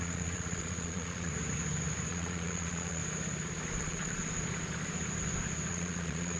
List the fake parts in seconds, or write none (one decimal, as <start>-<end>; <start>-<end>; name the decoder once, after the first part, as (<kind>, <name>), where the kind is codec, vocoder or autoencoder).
0.0-1.3 (vocoder, Vocos); 2.1-3.0; 3.8-4.2; 5.7-6.4